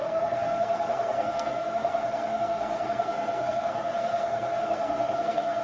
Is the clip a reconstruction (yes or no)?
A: yes